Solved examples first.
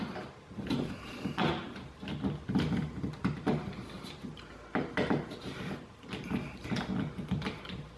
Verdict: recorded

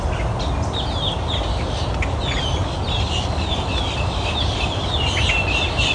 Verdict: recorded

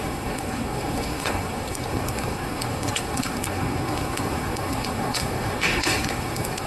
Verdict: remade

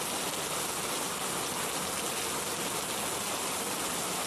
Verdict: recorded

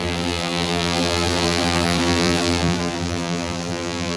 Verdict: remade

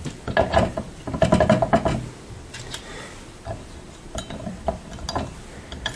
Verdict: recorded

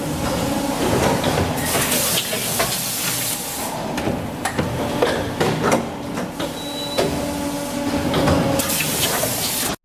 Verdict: recorded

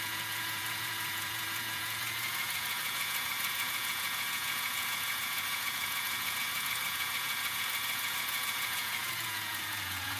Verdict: remade